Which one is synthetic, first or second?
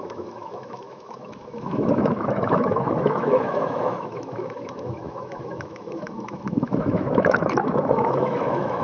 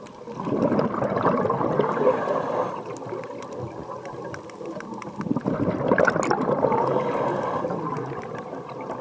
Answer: first